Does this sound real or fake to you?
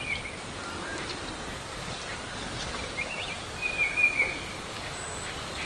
real